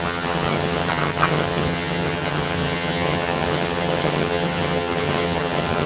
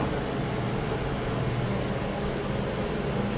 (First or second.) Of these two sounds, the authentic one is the second